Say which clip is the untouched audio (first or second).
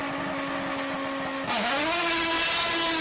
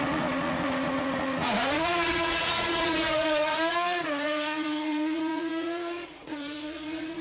first